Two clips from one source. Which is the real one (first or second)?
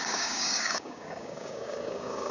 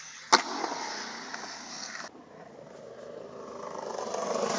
second